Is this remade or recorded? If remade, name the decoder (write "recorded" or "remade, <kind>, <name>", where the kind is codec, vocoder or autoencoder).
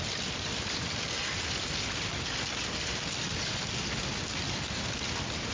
recorded